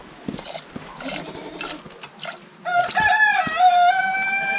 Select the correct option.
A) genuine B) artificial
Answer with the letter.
A